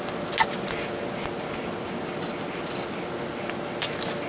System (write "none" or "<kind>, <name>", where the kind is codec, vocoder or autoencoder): none